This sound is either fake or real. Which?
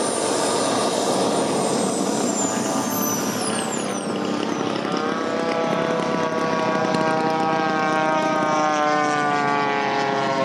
real